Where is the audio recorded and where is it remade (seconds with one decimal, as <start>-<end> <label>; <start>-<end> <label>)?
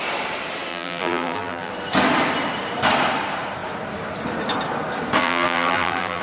0.0-0.7 recorded; 0.7-1.7 remade; 1.7-5.2 recorded; 5.2-6.2 remade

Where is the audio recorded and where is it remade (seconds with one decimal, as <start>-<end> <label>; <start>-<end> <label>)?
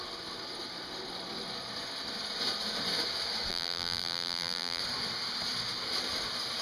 0.0-3.5 recorded; 3.5-4.8 remade; 4.8-6.6 recorded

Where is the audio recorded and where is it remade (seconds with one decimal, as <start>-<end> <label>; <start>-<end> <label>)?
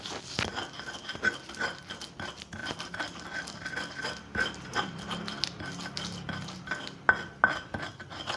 0.0-2.6 recorded; 2.6-4.0 remade; 4.0-8.4 recorded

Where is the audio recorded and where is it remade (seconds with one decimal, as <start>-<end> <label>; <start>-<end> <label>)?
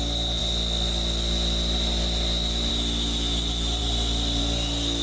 0.0-3.8 recorded; 3.8-4.4 remade; 4.4-5.0 recorded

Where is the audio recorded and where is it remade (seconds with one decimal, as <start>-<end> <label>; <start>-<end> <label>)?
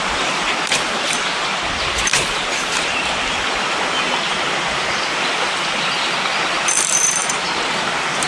0.0-8.3 recorded